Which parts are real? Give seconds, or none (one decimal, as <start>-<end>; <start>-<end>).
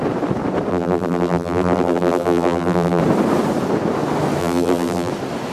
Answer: 0.0-0.7; 3.0-4.4; 5.1-5.5